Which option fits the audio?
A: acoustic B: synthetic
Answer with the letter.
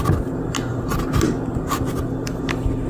A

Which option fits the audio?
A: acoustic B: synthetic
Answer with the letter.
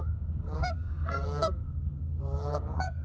B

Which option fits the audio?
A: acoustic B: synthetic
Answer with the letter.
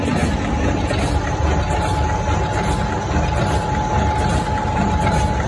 A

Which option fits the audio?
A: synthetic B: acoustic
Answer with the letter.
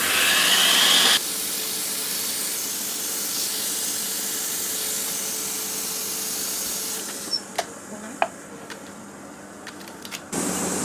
B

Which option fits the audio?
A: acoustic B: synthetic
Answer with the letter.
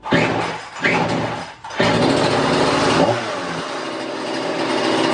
A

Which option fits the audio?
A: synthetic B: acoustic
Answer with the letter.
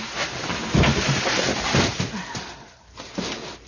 B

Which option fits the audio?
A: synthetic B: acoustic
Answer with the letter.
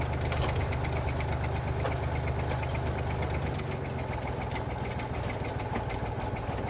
B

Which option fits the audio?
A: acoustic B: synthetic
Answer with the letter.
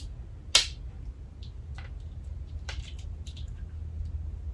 A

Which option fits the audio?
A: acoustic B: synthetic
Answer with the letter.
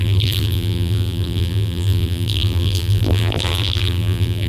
B